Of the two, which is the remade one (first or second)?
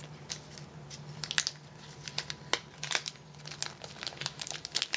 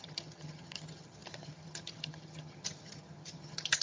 second